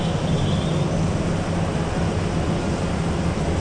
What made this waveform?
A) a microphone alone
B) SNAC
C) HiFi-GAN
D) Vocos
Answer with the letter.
A